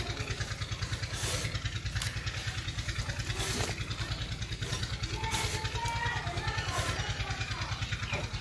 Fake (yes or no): no